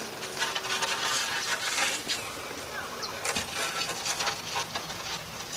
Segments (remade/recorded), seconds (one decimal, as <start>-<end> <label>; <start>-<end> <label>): 0.0-5.6 recorded